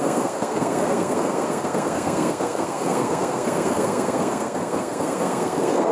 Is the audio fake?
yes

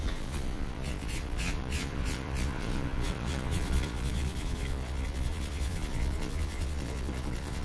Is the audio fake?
yes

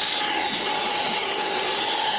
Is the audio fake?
no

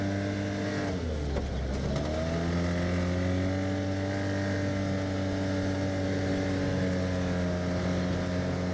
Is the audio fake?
no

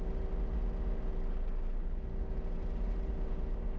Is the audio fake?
no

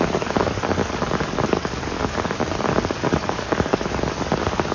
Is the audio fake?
yes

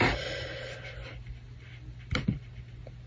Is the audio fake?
no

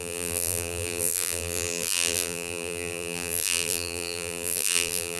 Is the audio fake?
yes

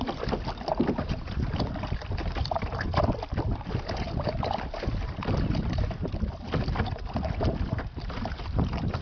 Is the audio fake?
no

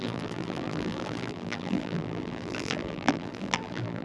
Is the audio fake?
yes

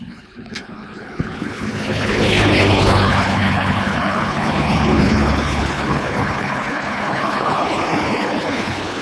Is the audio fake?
yes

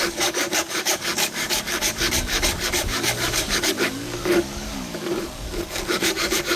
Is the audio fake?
yes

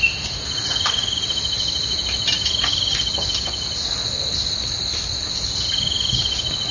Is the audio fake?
no